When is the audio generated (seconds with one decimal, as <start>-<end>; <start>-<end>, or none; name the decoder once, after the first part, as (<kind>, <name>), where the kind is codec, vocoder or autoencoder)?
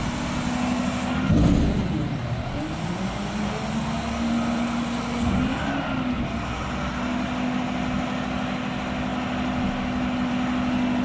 none